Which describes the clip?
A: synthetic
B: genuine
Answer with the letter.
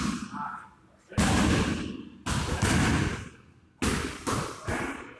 B